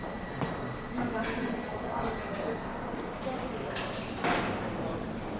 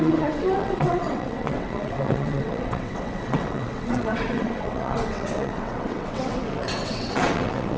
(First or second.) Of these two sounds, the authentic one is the first